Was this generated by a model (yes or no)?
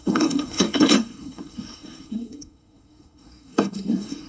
yes